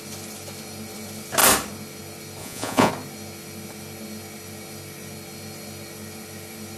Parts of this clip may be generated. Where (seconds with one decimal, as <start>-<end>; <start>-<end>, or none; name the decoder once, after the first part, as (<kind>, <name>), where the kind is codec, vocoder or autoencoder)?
2.4-2.9 (vocoder, Vocos)